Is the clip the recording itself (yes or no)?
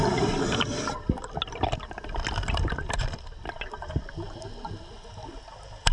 yes